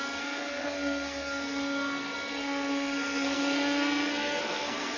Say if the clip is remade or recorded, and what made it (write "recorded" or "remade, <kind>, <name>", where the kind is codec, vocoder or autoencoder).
remade, codec, SNAC